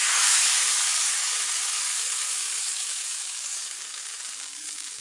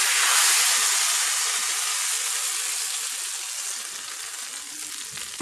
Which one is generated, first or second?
first